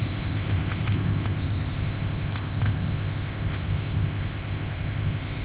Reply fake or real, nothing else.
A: fake